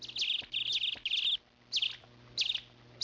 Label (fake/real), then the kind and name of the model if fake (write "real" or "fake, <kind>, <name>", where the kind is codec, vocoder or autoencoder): real